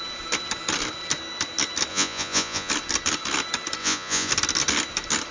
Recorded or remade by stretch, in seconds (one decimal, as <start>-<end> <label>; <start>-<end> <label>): 0.0-1.9 recorded; 1.9-2.7 remade; 2.7-3.8 recorded; 3.8-4.3 remade; 4.3-5.3 recorded